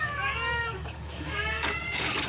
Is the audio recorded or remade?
remade